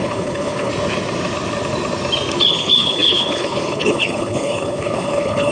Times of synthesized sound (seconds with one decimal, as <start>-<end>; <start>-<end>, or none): 0.0-0.7; 2.5-5.5